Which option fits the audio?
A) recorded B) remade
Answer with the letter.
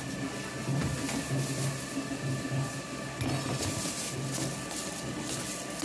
A